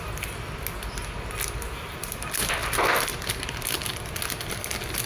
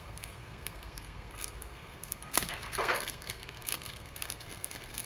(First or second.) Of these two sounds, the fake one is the second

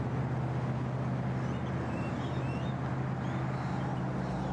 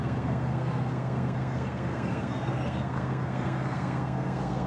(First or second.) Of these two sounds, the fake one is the second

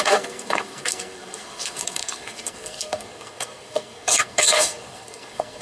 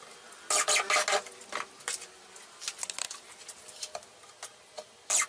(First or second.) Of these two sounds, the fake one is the first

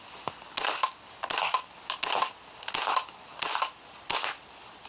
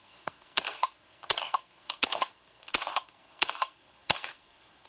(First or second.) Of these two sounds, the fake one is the second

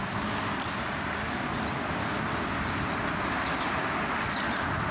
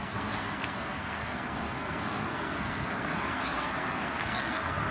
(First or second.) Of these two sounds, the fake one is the second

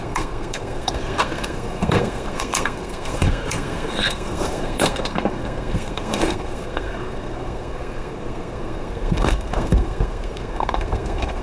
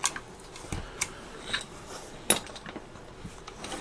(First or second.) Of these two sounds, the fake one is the first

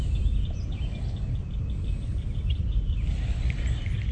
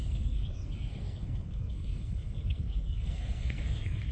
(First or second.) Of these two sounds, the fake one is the second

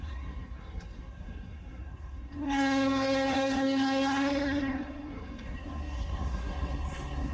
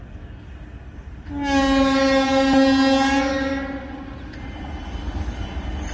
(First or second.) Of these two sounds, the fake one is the first